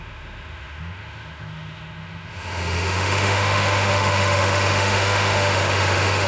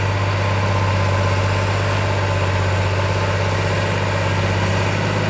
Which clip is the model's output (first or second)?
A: first